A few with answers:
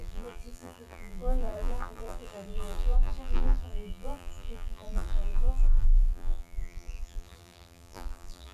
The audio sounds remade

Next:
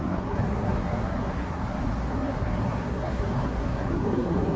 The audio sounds remade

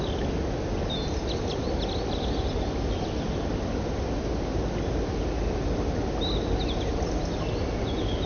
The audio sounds recorded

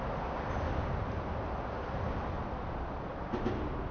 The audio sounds recorded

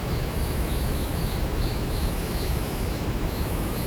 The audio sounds remade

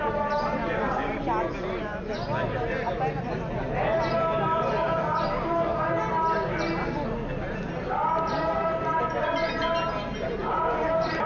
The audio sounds recorded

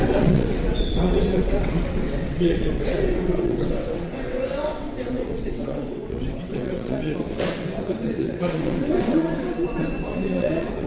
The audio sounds remade